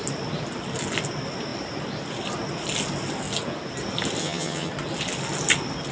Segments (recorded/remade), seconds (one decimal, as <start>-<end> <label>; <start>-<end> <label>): 0.0-4.2 recorded; 4.2-4.7 remade; 4.7-5.9 recorded